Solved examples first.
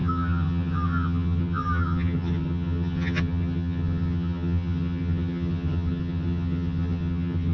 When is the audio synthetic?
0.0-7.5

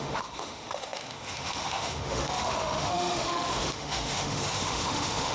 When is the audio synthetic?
0.0-5.3

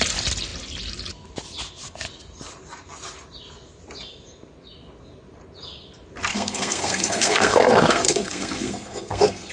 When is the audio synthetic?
6.3-9.5

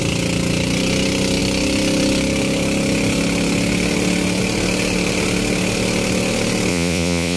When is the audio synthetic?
6.7-7.4

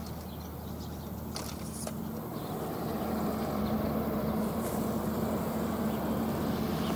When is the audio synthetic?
2.3-6.4

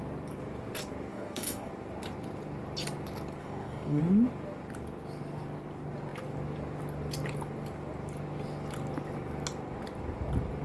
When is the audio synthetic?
1.1-1.7; 3.4-4.0

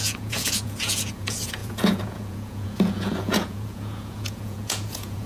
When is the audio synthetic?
0.0-5.3

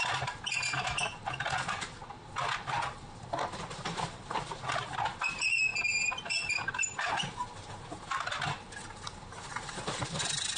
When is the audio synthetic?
none